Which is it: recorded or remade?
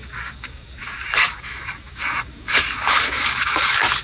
remade